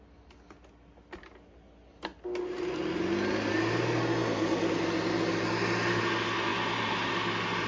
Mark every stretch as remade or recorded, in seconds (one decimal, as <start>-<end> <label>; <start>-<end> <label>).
0.0-7.7 recorded